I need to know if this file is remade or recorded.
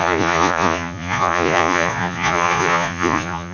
remade